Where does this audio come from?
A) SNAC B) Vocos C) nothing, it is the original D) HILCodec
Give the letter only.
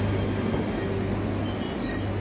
C